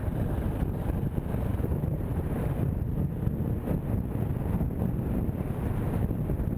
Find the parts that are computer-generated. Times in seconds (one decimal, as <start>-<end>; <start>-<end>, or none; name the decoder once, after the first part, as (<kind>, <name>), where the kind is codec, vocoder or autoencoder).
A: 1.5-3.3 (vocoder, BigVGAN v2)